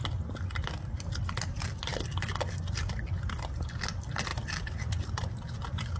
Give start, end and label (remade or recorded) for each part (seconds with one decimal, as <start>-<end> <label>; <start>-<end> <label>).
0.0-6.0 recorded